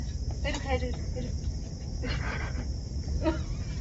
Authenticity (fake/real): real